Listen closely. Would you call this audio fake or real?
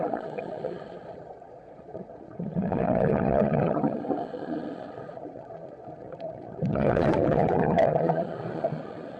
fake